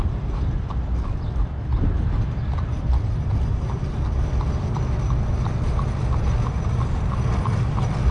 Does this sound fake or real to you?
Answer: real